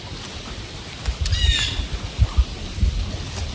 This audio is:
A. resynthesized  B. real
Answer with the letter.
B